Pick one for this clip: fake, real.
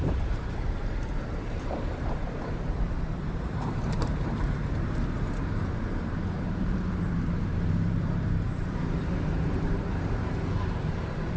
fake